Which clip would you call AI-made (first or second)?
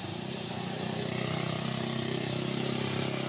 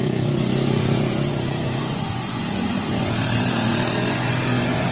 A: second